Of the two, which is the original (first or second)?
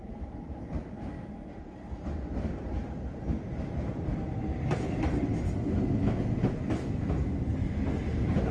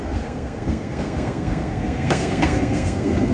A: first